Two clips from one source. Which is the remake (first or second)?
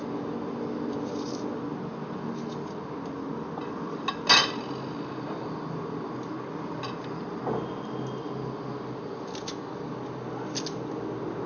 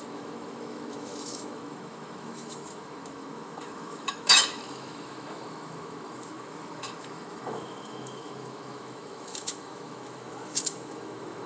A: second